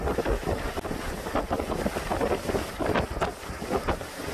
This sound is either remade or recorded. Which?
recorded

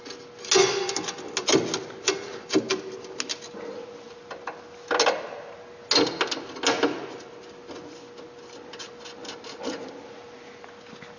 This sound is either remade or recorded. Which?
recorded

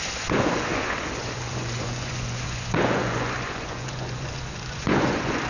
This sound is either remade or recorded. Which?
remade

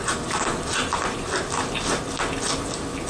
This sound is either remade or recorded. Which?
recorded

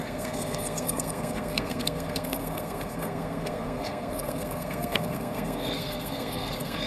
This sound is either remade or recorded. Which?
remade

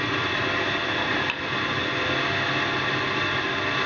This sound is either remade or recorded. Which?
recorded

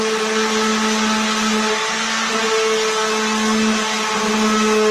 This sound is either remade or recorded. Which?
recorded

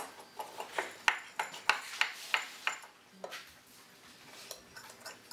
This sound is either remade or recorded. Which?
recorded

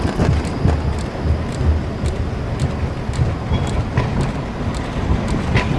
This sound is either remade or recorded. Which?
recorded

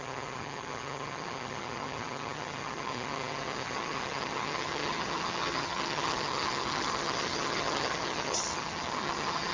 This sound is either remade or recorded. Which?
remade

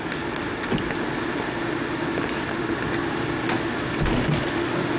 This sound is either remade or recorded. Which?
recorded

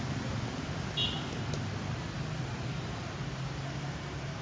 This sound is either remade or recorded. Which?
recorded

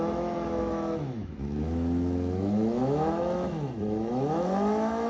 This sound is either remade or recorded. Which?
remade